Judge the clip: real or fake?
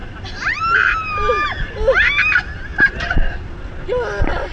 real